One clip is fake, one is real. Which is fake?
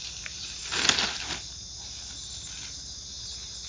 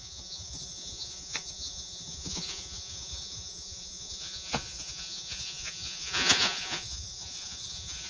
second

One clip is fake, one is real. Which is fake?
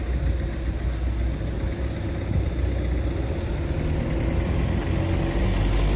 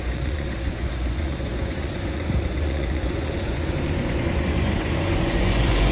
second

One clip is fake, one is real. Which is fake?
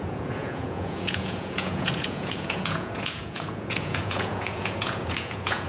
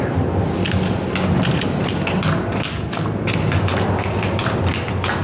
first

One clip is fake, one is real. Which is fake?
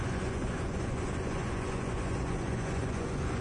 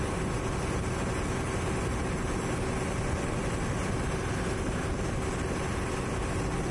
first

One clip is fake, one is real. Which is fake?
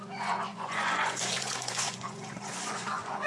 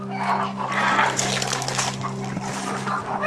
first